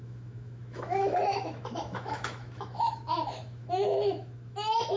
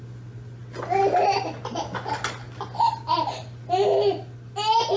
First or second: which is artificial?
first